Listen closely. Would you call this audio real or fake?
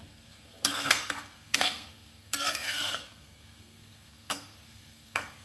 fake